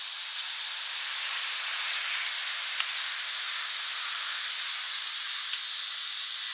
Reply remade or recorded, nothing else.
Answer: recorded